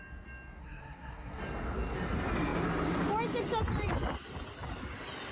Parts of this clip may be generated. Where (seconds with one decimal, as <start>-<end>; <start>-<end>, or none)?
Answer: 0.6-1.4